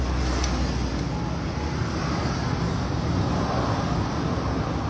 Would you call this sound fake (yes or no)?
no